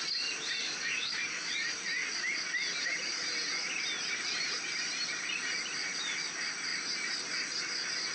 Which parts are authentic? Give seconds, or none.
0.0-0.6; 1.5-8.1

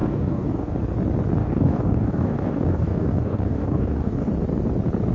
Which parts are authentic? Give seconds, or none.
0.8-1.4; 4.3-5.1

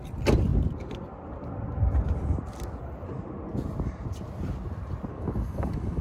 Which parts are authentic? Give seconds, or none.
0.0-5.1

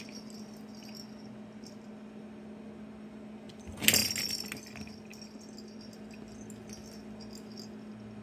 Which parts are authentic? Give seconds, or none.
0.0-8.2